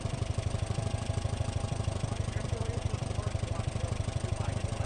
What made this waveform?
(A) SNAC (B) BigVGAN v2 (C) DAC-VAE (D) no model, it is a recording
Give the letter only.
B